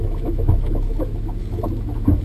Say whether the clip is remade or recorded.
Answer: remade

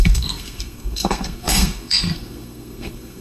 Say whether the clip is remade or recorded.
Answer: remade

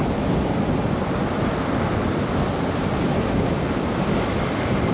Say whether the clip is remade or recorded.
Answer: recorded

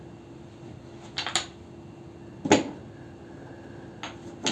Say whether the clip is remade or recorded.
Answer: recorded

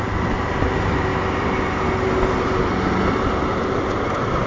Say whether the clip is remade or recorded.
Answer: recorded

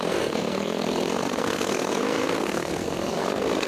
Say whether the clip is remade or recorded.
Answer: remade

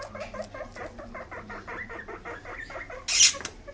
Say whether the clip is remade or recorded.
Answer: recorded